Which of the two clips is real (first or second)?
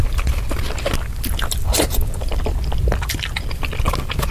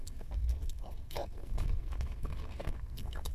first